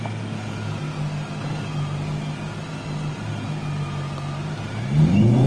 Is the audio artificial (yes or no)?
no